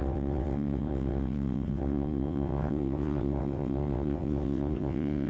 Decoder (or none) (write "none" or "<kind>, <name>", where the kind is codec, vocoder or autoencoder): vocoder, WaveNeXt